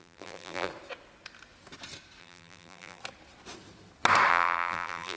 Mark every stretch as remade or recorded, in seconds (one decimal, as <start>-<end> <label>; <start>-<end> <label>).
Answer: 0.0-0.7 remade; 0.7-2.2 recorded; 2.2-3.0 remade; 3.0-4.3 recorded; 4.3-5.2 remade